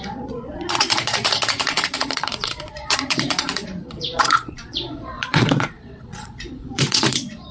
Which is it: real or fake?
fake